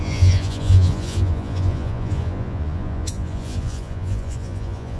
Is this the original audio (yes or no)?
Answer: no